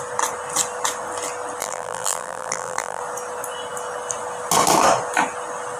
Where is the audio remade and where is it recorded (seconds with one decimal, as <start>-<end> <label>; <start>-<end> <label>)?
0.0-1.6 recorded; 1.6-3.0 remade; 3.0-5.8 recorded